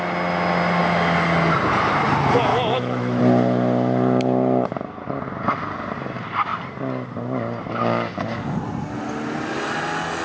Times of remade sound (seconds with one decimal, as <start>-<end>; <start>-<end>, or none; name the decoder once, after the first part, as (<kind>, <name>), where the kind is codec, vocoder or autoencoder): 2.5-3.2 (autoencoder, DAC-VAE)